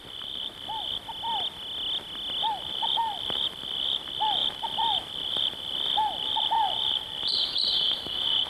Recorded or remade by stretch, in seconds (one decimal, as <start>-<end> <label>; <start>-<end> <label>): 0.0-1.0 remade; 1.0-2.4 recorded; 2.4-8.5 remade